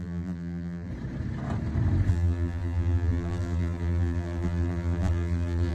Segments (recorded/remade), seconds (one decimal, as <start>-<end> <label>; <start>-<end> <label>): 0.0-0.9 remade; 0.9-2.1 recorded; 2.1-5.7 remade